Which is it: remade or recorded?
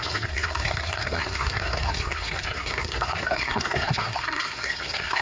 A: remade